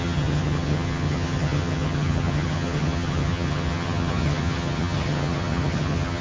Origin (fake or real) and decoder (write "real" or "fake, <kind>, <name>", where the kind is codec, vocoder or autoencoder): fake, vocoder, HiFi-GAN